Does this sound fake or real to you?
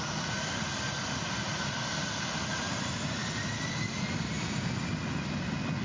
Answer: real